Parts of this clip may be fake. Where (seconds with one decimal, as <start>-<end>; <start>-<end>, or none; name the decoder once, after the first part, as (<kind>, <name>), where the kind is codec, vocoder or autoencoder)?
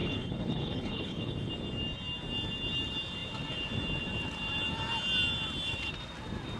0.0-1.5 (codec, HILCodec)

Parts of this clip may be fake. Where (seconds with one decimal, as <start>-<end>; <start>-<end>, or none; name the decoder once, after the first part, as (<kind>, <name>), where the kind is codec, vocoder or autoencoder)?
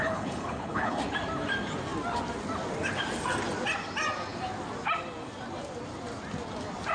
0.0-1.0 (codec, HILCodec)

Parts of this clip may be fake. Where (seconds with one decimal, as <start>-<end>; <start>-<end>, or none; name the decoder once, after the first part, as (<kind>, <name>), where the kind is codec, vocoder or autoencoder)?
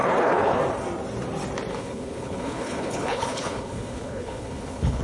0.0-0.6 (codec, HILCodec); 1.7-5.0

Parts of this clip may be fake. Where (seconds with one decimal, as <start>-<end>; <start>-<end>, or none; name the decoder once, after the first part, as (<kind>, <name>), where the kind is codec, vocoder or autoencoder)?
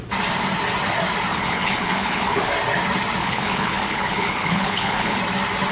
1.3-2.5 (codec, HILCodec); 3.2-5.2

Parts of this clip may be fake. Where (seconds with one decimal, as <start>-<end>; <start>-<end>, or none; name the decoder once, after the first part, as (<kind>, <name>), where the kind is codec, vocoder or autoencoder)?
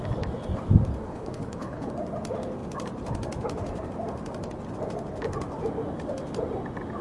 1.1-1.9 (codec, HILCodec)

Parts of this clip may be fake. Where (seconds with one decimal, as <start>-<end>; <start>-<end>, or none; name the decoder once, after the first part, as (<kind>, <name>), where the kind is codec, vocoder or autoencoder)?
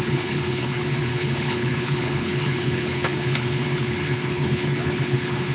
0.0-5.5 (codec, HILCodec)